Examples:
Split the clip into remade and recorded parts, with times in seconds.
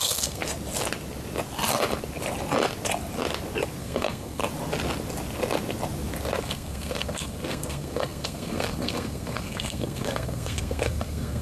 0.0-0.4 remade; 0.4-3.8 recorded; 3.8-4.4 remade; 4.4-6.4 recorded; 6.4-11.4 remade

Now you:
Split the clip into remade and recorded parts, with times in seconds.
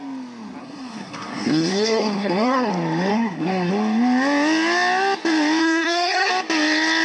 0.0-0.6 recorded; 0.6-2.7 remade; 2.7-3.1 recorded; 3.1-3.7 remade; 3.7-5.6 recorded; 5.6-6.3 remade; 6.3-7.0 recorded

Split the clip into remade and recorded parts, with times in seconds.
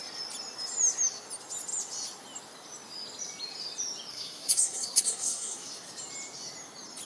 0.0-4.1 recorded; 4.1-5.7 remade; 5.7-7.1 recorded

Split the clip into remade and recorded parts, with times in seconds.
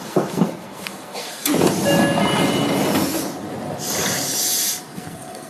0.0-1.5 remade; 1.5-4.8 recorded; 4.8-5.5 remade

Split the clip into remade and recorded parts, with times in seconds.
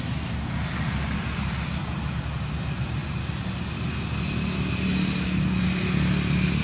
0.0-6.6 recorded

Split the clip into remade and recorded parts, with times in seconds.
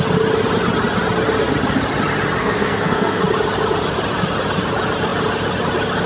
0.0-2.4 recorded; 2.4-3.2 remade; 3.2-6.1 recorded